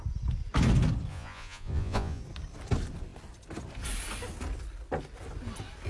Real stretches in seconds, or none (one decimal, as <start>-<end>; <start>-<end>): 0.0-1.1; 2.2-5.9